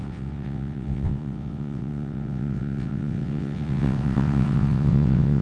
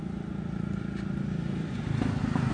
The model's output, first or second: first